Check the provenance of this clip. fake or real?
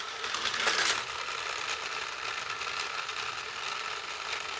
real